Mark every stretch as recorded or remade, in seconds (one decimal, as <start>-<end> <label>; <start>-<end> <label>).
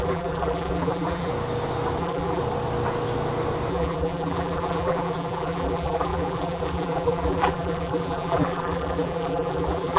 0.0-1.3 remade; 1.3-2.0 recorded; 2.0-2.4 remade; 2.4-3.7 recorded; 3.7-10.0 remade